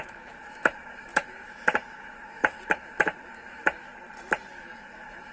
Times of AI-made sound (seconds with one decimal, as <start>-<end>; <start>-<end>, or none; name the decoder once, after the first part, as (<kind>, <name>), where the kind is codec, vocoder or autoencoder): 0.0-3.9 (autoencoder, DAC-VAE); 4.5-5.3